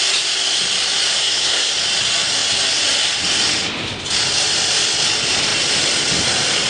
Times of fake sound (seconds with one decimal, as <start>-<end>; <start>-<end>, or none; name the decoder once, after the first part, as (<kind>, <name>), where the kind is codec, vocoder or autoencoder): 1.2-1.7 (codec, SNAC)